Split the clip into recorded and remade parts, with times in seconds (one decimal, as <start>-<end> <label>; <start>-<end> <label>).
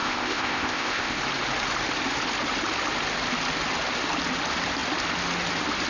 0.0-1.2 remade; 1.2-5.9 recorded